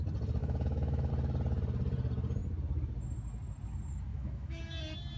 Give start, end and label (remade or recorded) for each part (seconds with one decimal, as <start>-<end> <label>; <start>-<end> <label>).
0.0-0.4 recorded; 0.4-1.1 remade; 1.1-4.1 recorded; 4.1-4.6 remade; 4.6-5.2 recorded